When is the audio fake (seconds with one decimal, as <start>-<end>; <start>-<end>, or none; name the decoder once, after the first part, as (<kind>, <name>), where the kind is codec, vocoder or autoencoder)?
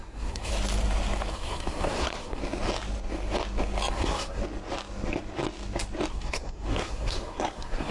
0.0-0.5 (codec, SNAC); 1.3-2.4; 3.9-4.4; 6.1-7.9